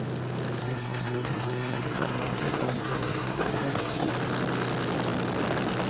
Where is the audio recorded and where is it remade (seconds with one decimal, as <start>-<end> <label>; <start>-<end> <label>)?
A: 0.0-0.6 recorded; 0.6-4.1 remade; 4.1-5.9 recorded